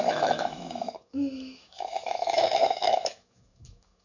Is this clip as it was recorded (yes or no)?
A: no